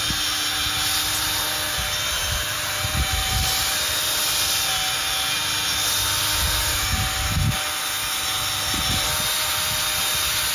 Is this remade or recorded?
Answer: recorded